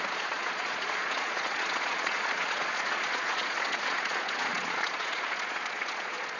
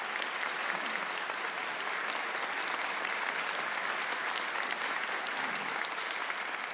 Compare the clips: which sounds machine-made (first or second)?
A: first